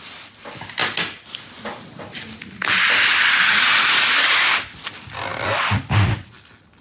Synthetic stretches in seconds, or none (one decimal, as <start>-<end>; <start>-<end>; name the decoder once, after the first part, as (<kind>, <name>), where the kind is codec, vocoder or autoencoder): none